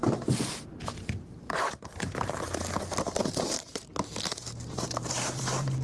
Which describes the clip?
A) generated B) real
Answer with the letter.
A